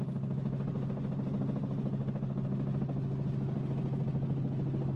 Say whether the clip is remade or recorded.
recorded